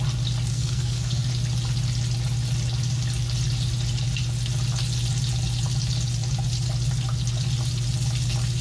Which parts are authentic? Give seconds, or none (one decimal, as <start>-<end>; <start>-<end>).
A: 0.0-0.5; 1.3-8.6